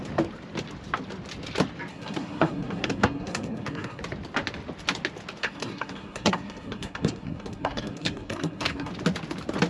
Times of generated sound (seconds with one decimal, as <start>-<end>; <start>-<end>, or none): 1.9-4.0; 5.4-8.9